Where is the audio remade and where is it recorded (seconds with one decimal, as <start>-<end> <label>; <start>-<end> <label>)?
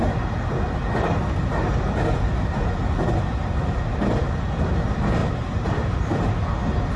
0.0-5.2 recorded; 5.2-6.4 remade; 6.4-7.0 recorded